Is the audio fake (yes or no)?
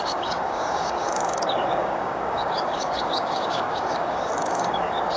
yes